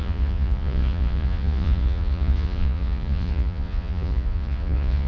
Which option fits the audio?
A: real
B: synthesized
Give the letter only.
B